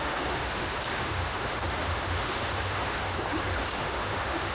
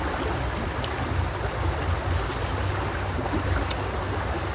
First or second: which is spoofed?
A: first